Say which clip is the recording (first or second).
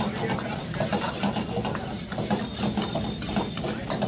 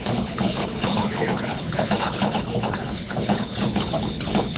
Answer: first